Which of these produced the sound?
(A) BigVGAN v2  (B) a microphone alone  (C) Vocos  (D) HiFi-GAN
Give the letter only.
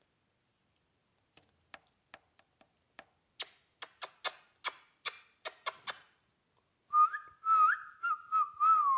B